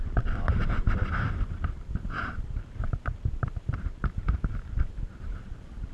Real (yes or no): no